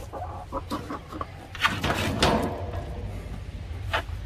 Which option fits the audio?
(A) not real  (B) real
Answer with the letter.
B